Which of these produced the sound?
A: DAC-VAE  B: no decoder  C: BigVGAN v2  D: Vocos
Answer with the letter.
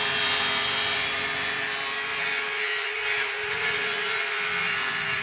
D